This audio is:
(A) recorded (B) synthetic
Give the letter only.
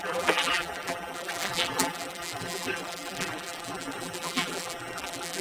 B